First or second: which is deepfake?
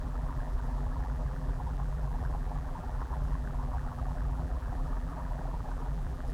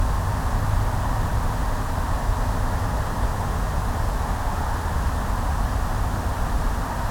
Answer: first